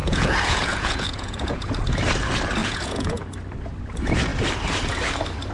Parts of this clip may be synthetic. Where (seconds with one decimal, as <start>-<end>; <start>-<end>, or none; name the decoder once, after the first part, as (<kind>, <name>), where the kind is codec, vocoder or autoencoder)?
0.0-1.7 (vocoder, Vocos); 2.6-3.2

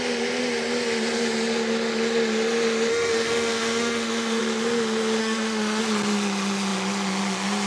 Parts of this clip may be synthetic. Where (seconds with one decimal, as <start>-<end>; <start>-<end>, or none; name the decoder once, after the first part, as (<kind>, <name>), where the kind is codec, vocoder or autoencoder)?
2.9-4.4 (autoencoder, DAC-VAE); 5.2-5.8